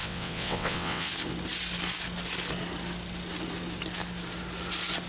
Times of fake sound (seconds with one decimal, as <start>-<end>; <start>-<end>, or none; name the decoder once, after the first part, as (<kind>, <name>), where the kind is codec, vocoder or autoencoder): 0.0-1.1 (vocoder, WaveNeXt)